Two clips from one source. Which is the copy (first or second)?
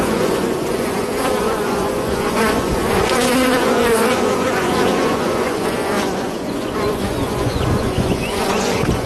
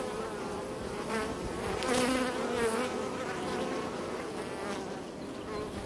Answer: first